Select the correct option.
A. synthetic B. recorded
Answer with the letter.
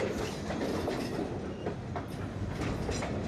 B